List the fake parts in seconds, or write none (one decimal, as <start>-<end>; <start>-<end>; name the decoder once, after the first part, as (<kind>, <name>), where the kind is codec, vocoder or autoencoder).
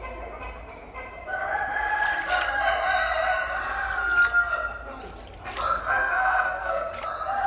5.8-6.9 (codec, SNAC)